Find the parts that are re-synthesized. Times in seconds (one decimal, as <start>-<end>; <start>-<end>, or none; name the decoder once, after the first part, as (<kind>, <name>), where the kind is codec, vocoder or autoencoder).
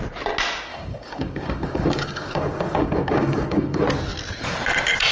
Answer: 0.7-3.8 (codec, DAC)